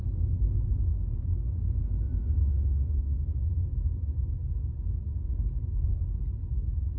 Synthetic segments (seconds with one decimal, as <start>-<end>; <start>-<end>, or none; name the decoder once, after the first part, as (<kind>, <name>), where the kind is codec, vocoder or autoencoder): 2.4-3.7 (autoencoder, DAC-VAE)

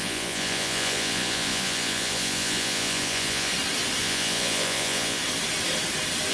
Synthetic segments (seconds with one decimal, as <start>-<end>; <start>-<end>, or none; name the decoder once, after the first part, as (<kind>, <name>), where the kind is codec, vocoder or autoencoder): 0.0-3.5 (vocoder, Vocos); 4.0-5.2

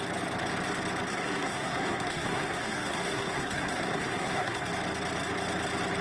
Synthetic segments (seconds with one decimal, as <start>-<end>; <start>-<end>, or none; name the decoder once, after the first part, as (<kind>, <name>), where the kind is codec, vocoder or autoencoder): 1.1-4.7 (codec, SNAC)

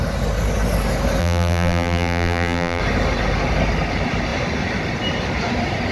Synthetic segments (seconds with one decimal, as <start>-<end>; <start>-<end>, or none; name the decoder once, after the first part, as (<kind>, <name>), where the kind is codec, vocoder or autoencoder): 1.2-2.8 (vocoder, BigVGAN v2)

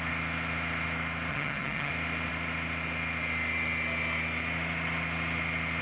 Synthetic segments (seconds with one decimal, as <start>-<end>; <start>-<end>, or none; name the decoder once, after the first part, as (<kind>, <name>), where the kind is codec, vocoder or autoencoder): 1.3-1.9 (vocoder, HiFi-GAN)

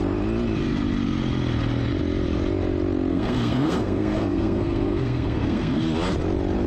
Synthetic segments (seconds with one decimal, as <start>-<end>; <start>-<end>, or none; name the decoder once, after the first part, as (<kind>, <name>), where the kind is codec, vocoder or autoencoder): 3.1-5.8 (codec, SNAC)